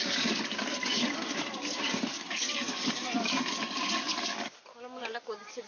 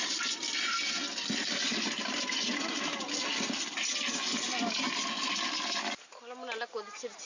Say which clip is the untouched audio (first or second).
second